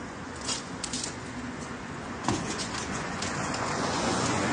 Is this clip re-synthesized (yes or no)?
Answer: yes